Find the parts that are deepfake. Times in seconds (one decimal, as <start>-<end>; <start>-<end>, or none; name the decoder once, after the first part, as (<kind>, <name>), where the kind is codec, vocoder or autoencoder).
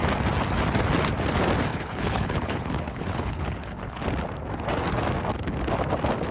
1.7-4.0 (codec, HILCodec)